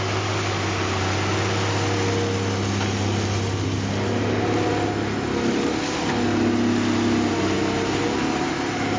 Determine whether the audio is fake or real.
real